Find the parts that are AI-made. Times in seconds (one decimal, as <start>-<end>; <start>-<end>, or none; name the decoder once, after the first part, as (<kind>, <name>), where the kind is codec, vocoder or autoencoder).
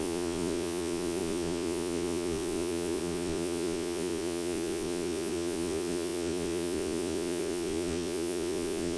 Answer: 0.0-9.0 (vocoder, Vocos)